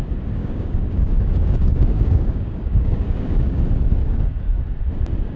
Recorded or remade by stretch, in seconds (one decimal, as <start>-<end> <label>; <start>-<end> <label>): 0.0-0.4 recorded; 0.4-3.6 remade; 3.6-4.0 recorded; 4.0-4.6 remade; 4.6-5.4 recorded